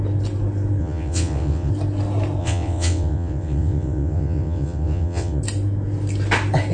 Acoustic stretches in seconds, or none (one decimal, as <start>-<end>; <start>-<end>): 0.0-0.8; 1.7-2.4; 5.4-6.7